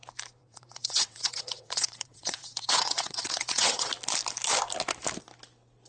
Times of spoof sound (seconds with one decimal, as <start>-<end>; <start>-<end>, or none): 0.4-3.9